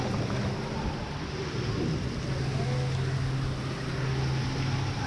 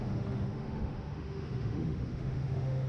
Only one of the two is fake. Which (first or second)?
second